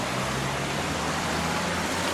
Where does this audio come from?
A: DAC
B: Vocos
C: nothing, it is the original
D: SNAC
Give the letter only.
C